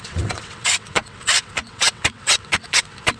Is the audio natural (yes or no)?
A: no